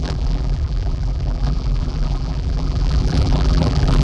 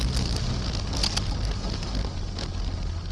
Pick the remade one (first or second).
first